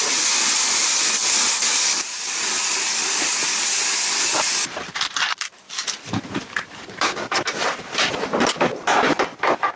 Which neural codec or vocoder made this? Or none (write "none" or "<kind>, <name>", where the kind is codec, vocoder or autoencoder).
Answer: vocoder, BigVGAN v2